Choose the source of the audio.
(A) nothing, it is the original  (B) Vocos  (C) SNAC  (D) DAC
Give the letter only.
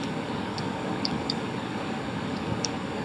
D